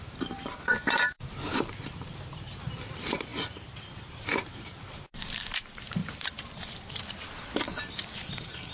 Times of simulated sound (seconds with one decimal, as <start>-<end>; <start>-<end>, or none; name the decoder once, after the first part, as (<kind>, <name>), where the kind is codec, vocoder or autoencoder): 0.0-8.7 (vocoder, BigVGAN v2)